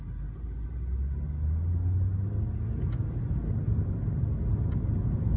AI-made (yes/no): no